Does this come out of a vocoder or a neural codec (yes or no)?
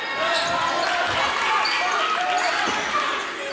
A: no